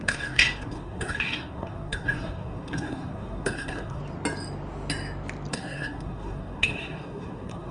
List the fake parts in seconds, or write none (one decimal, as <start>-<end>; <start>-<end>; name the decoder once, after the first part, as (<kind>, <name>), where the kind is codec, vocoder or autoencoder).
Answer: 0.0-4.0 (codec, SNAC); 5.5-7.7